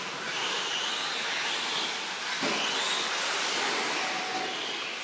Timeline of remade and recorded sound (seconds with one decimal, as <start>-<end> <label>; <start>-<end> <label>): 0.0-0.7 remade; 0.7-3.7 recorded; 3.7-4.3 remade; 4.3-5.0 recorded

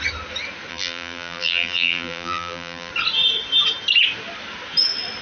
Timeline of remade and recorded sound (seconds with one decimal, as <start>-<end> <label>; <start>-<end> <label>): 0.0-0.7 recorded; 0.7-2.9 remade; 2.9-5.2 recorded

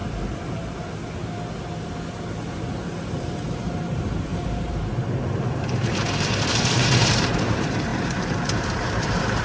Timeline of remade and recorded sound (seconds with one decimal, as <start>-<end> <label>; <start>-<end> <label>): 0.0-2.7 recorded; 2.7-4.3 remade; 4.3-5.2 recorded; 5.2-9.4 remade

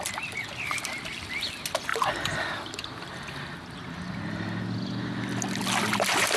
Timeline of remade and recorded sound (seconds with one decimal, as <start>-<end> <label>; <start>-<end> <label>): 0.0-6.4 recorded